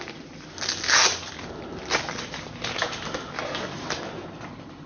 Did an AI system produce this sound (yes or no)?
no